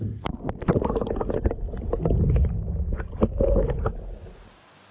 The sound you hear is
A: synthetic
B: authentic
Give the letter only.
B